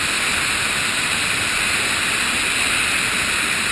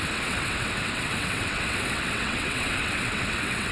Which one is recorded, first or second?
first